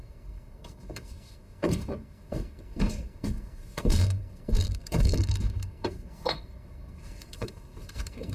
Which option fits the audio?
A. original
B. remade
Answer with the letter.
B